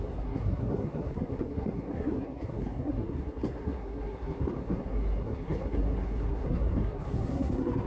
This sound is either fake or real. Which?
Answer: fake